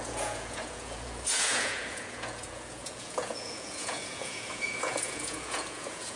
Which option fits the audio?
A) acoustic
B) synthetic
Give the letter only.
B